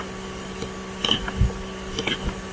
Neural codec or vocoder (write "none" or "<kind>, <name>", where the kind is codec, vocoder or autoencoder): none